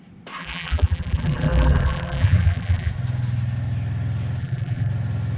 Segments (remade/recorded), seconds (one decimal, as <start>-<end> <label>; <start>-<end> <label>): 0.0-0.4 recorded; 0.4-2.9 remade; 2.9-4.4 recorded; 4.4-4.9 remade; 4.9-5.4 recorded